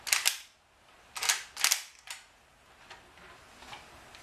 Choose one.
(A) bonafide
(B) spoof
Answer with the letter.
A